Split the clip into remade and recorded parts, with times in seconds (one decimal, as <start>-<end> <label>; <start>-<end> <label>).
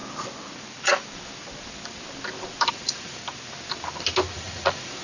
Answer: 0.0-2.7 recorded; 2.7-3.2 remade; 3.2-4.3 recorded; 4.3-5.0 remade